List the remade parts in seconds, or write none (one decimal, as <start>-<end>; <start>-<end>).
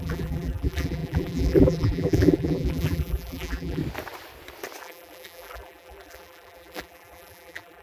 0.0-3.8; 4.8-7.8